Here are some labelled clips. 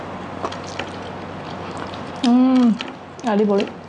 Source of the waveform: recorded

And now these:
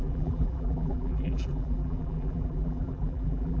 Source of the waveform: remade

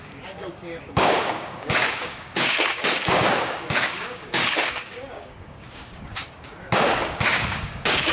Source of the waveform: remade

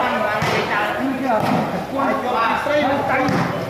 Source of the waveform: recorded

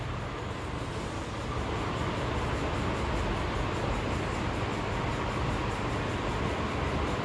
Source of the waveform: recorded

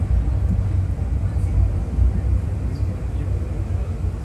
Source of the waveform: recorded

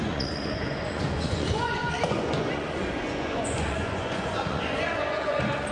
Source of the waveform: remade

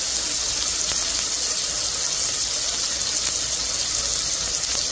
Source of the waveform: recorded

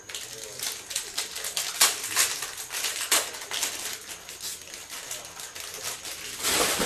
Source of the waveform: recorded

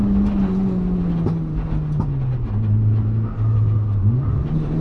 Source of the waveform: recorded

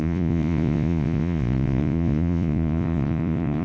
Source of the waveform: remade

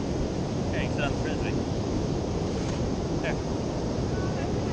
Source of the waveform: recorded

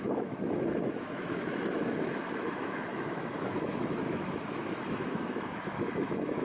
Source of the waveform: remade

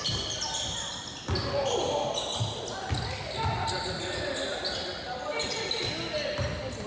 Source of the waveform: recorded